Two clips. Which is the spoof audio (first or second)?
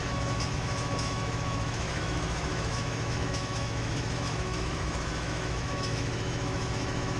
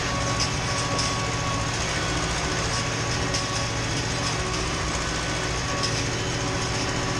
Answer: first